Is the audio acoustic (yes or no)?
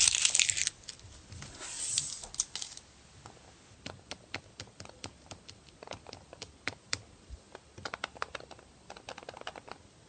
yes